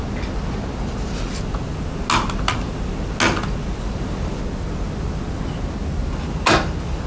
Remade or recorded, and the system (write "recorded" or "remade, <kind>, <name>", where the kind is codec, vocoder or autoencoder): recorded